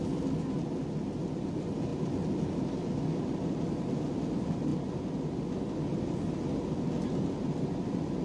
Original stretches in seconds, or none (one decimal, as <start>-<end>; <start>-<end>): 0.0-8.2